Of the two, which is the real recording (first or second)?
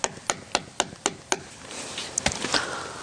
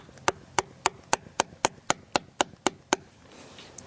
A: second